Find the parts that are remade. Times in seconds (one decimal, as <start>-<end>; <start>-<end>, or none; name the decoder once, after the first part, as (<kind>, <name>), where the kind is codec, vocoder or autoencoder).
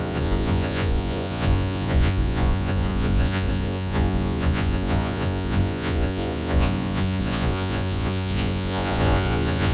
0.0-9.7 (vocoder, Vocos)